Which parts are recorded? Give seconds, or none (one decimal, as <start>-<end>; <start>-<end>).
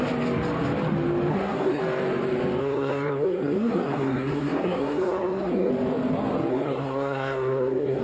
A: 0.0-1.3; 1.8-2.6; 5.7-6.5